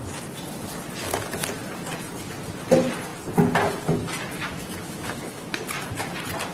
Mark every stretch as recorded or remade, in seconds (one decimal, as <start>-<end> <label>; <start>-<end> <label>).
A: 0.0-4.4 recorded; 4.4-5.7 remade; 5.7-6.5 recorded